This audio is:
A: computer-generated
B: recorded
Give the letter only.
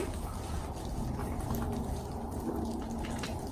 B